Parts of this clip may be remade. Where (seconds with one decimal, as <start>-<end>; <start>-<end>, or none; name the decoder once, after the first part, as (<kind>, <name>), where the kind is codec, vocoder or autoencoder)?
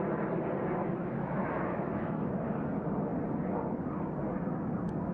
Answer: 1.0-2.3 (autoencoder, DAC-VAE)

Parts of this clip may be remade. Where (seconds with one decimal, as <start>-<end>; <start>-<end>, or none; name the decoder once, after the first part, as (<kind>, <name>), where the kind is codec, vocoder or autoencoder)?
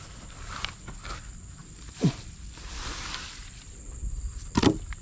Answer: 1.6-4.6 (vocoder, BigVGAN v2)